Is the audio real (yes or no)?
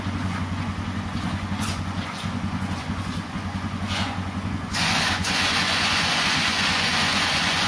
no